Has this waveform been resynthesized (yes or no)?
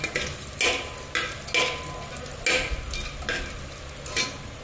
no